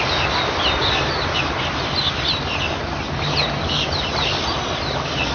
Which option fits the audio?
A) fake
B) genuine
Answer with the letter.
B